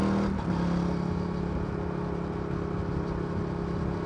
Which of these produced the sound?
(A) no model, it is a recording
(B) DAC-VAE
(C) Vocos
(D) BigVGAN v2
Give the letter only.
A